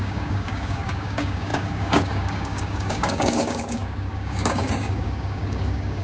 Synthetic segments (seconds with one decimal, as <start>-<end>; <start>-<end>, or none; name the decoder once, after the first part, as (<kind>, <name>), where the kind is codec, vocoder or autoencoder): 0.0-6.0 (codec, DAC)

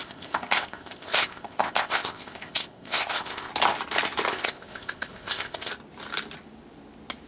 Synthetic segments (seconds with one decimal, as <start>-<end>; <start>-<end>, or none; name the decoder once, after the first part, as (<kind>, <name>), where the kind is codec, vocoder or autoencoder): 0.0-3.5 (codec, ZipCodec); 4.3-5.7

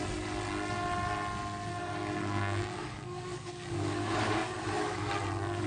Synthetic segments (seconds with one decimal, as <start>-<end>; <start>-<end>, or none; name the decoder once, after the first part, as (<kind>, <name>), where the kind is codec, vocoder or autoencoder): 1.7-5.1 (codec, DAC)

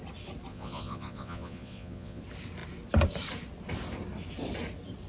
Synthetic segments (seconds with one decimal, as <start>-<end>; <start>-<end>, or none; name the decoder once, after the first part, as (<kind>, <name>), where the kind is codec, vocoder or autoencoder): 0.5-2.2 (vocoder, Vocos)

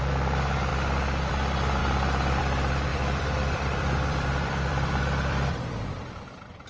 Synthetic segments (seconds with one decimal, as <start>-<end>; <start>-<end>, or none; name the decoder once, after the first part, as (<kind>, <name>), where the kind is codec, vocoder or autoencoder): 2.9-6.7 (vocoder, BigVGAN v2)